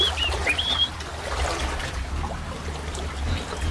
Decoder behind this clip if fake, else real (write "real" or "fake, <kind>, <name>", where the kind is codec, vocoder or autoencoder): real